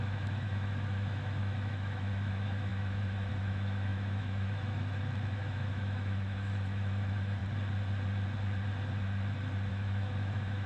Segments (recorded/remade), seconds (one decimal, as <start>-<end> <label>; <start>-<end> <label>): 0.0-7.4 remade; 7.4-9.7 recorded; 9.7-10.7 remade